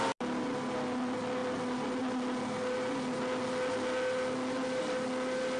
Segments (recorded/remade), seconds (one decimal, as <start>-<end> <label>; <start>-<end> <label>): 0.0-5.6 recorded